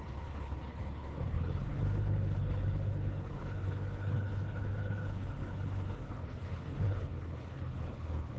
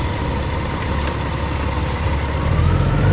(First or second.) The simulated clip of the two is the first